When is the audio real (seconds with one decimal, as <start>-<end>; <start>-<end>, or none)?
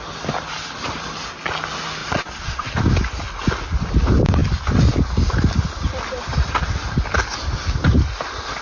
0.0-2.0; 2.7-8.6